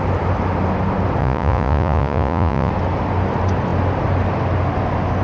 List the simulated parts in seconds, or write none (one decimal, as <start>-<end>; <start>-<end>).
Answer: 1.2-2.7